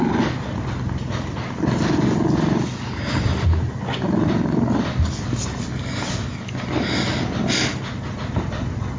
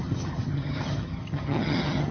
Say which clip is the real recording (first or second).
first